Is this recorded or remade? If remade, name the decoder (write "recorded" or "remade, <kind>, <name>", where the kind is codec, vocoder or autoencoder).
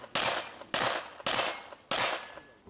recorded